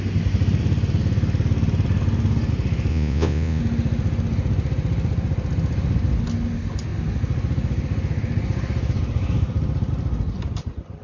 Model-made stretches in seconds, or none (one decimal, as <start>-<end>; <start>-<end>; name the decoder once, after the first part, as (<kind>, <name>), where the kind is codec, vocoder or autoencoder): 2.9-3.6 (vocoder, Vocos)